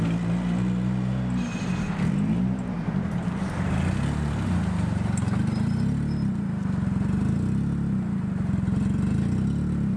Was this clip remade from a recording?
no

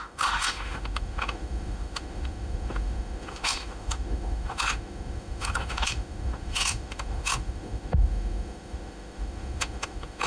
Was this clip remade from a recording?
yes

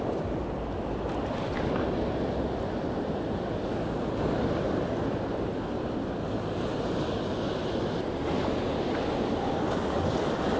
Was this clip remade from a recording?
no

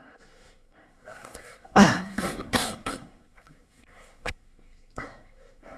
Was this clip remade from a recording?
yes